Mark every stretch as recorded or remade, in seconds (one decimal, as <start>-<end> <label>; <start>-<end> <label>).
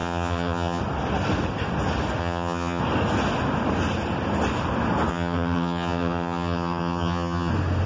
0.0-0.8 remade; 0.8-2.2 recorded; 2.2-2.8 remade; 2.8-5.1 recorded; 5.1-7.5 remade; 7.5-7.9 recorded